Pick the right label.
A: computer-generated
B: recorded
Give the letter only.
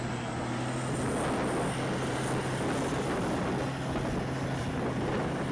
B